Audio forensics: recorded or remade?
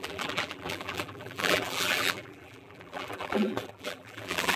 remade